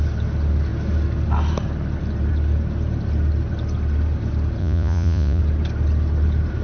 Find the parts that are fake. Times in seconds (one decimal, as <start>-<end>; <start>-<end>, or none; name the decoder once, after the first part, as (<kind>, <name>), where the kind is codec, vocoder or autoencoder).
4.6-5.4 (vocoder, Vocos)